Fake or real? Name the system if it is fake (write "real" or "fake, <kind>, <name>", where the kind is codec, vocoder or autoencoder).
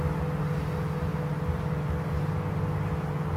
real